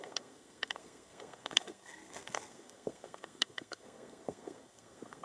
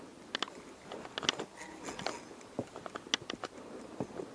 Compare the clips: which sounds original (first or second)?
second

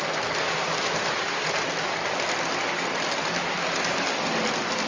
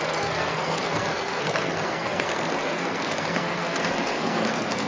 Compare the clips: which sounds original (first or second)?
first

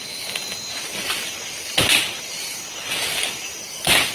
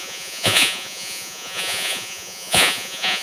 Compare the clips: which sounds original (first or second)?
first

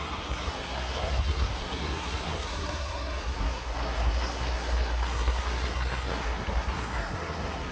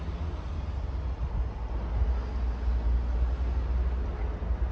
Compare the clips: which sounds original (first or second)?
second